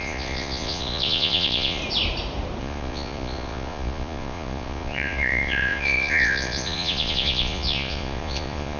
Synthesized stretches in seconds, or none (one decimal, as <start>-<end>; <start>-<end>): 0.0-1.8; 2.6-8.8